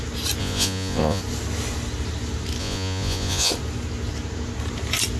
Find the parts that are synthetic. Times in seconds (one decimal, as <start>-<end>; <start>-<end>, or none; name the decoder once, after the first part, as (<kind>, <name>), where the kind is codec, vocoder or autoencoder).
0.4-1.2 (vocoder, Vocos); 2.6-3.5